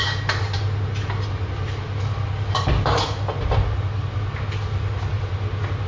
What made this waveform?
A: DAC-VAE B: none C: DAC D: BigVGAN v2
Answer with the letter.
B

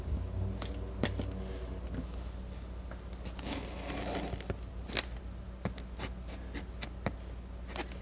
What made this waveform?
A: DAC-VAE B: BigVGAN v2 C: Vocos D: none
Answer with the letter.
D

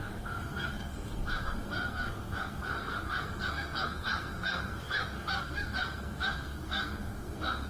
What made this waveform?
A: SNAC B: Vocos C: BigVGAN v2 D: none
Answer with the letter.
A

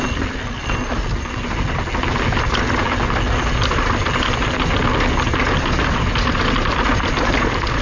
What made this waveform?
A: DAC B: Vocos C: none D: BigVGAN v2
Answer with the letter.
C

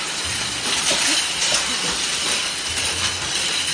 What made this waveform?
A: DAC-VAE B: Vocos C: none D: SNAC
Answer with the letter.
C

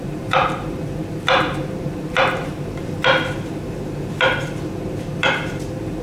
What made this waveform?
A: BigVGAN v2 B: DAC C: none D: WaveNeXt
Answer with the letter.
A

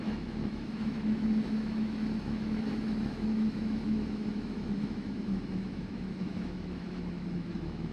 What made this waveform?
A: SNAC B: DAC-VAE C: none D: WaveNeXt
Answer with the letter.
B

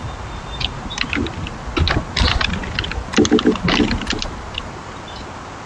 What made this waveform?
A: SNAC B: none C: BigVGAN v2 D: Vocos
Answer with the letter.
B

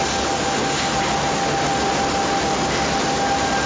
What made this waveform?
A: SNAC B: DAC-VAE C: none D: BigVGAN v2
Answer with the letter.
C